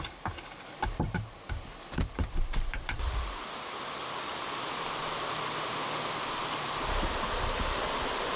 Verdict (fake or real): real